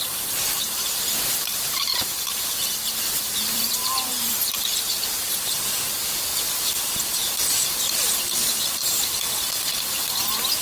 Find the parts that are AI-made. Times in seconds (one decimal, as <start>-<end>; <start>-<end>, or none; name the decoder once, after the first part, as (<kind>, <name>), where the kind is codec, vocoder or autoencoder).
0.0-6.3 (vocoder, BigVGAN v2); 6.8-10.6